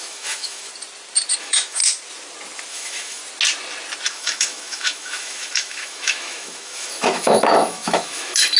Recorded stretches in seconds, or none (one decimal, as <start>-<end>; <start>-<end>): 0.7-1.4; 1.8-2.7; 3.2-4.1